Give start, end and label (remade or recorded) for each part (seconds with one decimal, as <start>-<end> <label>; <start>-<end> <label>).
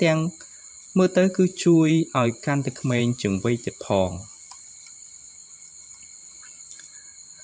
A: 0.0-1.5 recorded; 1.5-3.0 remade; 3.0-7.4 recorded